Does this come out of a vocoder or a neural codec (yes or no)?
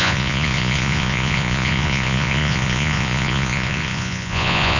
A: yes